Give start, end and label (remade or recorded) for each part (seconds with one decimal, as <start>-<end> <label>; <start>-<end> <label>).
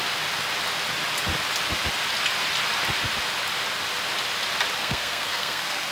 0.0-4.8 recorded; 4.8-5.9 remade